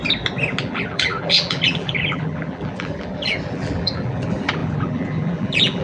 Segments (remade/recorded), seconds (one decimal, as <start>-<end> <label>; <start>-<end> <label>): 0.0-0.6 recorded; 0.6-5.8 remade